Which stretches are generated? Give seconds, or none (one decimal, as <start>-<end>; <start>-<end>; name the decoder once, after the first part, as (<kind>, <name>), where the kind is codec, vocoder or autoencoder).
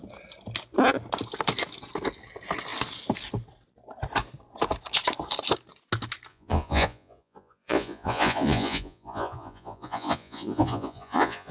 6.3-11.5 (vocoder, Vocos)